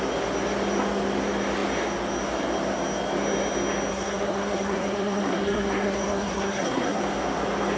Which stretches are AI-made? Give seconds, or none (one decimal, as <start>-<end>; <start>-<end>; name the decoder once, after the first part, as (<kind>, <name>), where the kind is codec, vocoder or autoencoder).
3.9-7.0 (codec, SNAC)